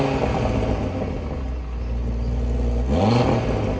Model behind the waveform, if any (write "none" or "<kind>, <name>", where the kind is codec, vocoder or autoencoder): none